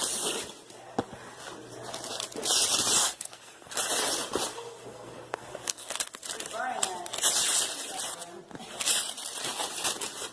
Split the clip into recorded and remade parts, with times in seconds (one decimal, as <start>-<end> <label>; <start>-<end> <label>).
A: 0.0-3.0 recorded; 3.0-3.7 remade; 3.7-4.5 recorded; 4.5-5.9 remade; 5.9-10.3 recorded